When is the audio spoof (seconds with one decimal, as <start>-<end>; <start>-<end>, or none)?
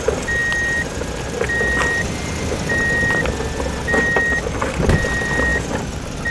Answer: none